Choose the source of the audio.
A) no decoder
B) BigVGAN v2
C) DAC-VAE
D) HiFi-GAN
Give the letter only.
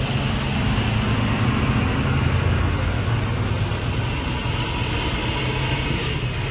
A